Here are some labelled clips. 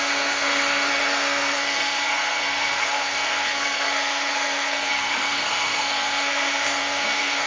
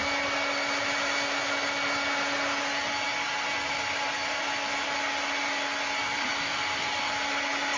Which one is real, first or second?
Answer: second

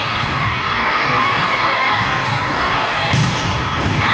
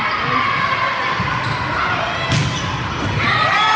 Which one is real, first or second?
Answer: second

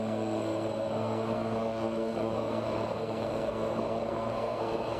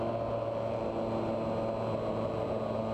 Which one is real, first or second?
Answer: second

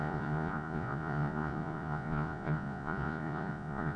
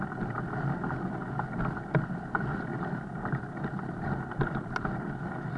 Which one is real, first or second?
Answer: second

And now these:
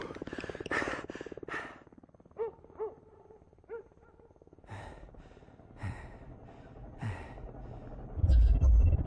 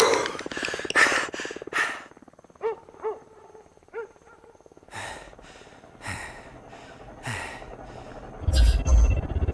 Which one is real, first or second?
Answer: second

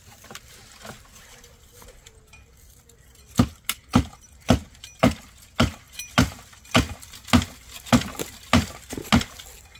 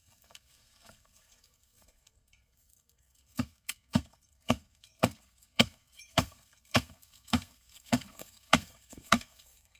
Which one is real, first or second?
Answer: first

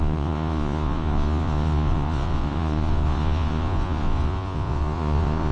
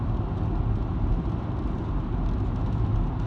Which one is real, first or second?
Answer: second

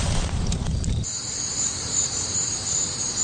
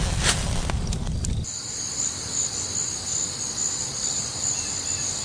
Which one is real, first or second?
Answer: second